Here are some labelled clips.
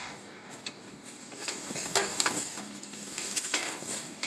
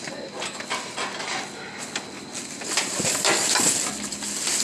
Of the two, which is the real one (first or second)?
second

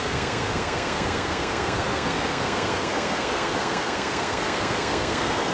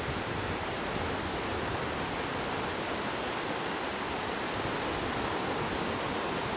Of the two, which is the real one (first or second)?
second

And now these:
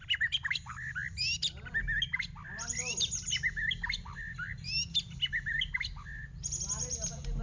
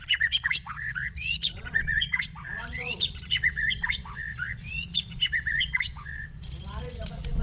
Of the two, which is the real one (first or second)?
first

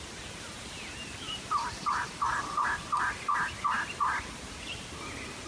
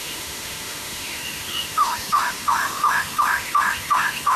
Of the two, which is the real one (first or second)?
first